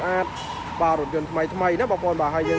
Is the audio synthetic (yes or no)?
no